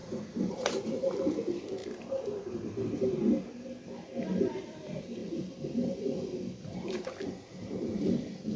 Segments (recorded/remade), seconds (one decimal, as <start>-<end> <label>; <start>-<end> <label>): 0.0-1.8 remade; 1.8-4.2 recorded; 4.2-8.6 remade